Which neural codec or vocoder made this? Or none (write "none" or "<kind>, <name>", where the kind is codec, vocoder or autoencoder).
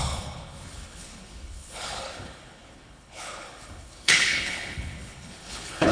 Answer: codec, HILCodec